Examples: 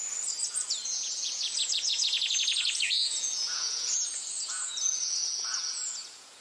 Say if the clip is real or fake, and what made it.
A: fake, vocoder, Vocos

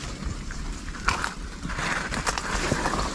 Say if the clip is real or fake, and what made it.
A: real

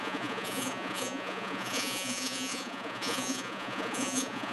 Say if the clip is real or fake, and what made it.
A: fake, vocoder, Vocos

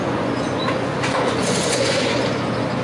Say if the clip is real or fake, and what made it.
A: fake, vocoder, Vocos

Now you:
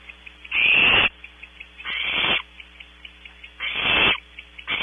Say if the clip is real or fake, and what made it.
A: real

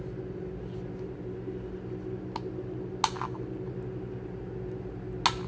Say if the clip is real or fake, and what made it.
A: real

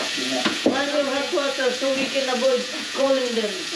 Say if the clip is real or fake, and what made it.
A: fake, vocoder, Vocos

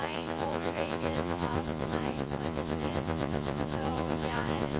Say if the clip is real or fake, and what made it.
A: fake, vocoder, Vocos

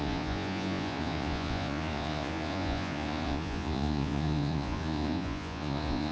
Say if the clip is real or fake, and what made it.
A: fake, vocoder, Vocos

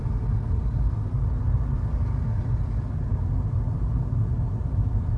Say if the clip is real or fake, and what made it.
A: real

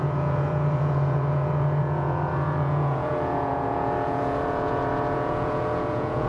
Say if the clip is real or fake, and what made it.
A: fake, vocoder, Vocos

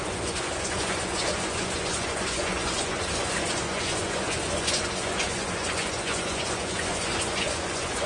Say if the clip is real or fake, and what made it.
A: fake, vocoder, Vocos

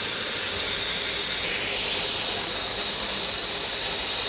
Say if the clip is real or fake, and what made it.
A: real